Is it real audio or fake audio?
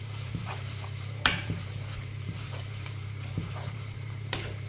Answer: fake